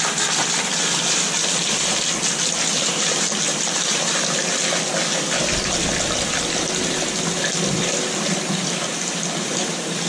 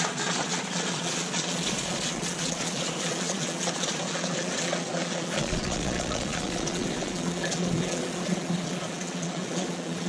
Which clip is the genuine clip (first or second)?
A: first